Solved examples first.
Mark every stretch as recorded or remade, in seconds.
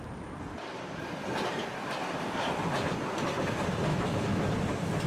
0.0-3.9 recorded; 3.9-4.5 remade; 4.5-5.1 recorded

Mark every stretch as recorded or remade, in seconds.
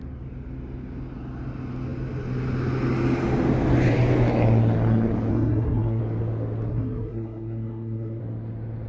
0.0-5.3 recorded; 5.3-6.0 remade; 6.0-6.7 recorded; 6.7-8.2 remade; 8.2-8.9 recorded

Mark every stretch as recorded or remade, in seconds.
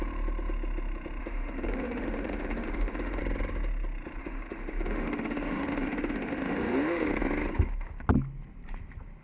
0.0-1.2 recorded; 1.2-3.2 remade; 3.2-4.2 recorded; 4.2-7.1 remade; 7.1-9.2 recorded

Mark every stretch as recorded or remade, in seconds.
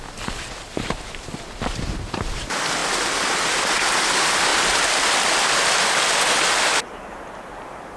0.0-4.5 remade; 4.5-8.0 recorded